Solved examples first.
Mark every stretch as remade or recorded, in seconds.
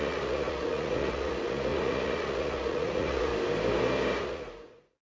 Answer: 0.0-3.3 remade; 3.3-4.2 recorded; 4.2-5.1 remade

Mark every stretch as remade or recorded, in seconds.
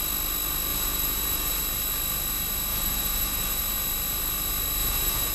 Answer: 0.0-0.7 recorded; 0.7-1.6 remade; 1.6-2.7 recorded; 2.7-3.6 remade; 3.6-4.8 recorded; 4.8-5.3 remade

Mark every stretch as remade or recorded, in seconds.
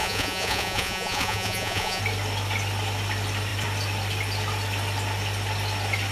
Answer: 0.0-2.0 remade; 2.0-6.1 recorded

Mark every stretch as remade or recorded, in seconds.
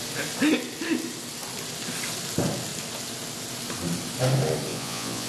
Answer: 0.0-4.7 recorded; 4.7-5.3 remade